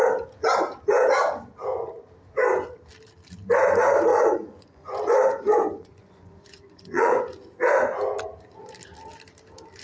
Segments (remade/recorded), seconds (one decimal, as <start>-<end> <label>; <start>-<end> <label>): 0.0-4.1 recorded; 4.1-7.2 remade; 7.2-9.8 recorded